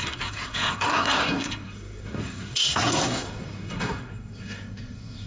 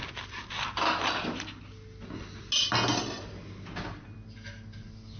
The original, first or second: second